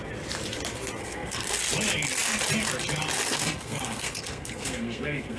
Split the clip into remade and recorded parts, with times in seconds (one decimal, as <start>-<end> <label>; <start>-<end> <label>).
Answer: 0.0-1.0 recorded; 1.0-1.6 remade; 1.6-3.3 recorded; 3.3-5.4 remade